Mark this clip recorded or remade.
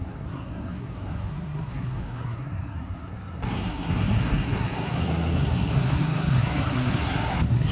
remade